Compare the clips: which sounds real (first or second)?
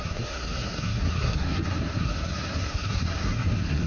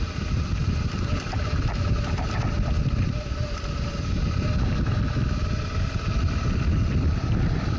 second